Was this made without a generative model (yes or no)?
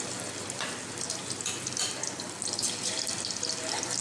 yes